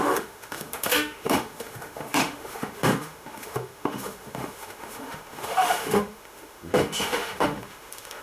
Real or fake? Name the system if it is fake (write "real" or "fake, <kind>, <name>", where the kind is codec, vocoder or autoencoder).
fake, autoencoder, DAC-VAE